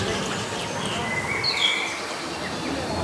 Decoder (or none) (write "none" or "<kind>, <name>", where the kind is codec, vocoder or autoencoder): none